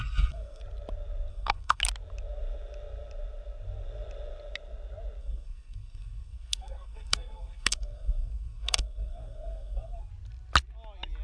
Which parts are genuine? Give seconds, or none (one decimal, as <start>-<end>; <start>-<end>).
0.6-1.3; 1.8-5.2; 10.1-11.2